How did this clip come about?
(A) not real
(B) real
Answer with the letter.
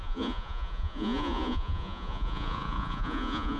A